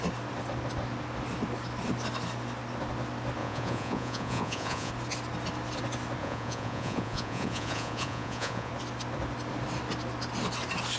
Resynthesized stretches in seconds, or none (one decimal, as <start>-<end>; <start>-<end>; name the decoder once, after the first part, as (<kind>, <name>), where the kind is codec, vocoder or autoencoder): 3.4-4.9 (vocoder, Vocos); 6.2-8.7